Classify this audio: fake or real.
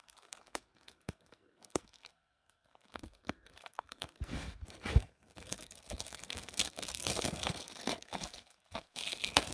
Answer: fake